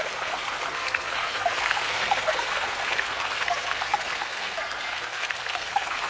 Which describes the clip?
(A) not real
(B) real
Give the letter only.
A